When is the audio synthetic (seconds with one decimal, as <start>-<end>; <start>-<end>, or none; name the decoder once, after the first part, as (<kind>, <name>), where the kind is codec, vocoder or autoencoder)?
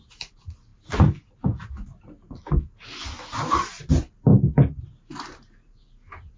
none